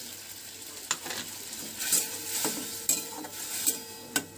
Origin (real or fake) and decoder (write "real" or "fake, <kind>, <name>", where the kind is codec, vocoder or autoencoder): real